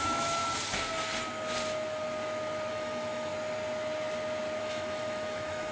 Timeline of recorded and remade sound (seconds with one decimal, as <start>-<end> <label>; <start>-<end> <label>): 0.0-0.4 remade; 0.4-2.7 recorded; 2.7-3.3 remade; 3.3-4.6 recorded; 4.6-5.7 remade